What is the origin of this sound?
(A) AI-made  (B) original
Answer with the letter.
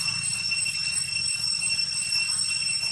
B